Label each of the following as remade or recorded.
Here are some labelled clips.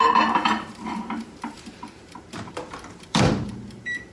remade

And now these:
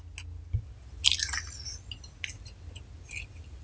recorded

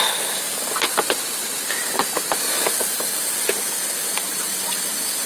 recorded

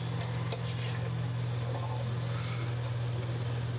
recorded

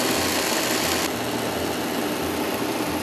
recorded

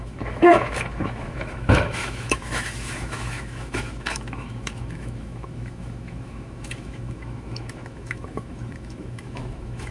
remade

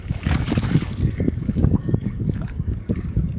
remade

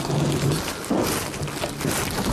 recorded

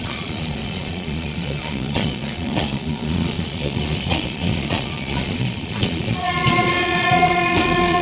remade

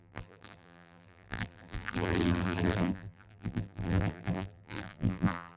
remade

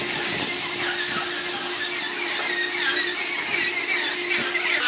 recorded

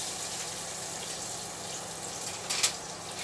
recorded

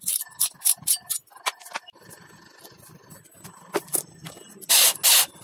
recorded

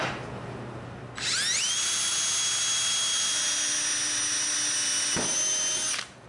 recorded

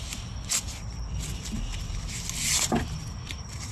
recorded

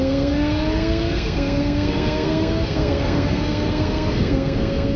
remade